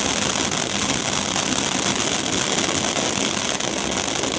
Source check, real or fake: real